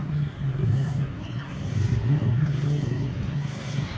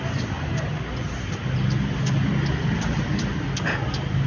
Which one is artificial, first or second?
first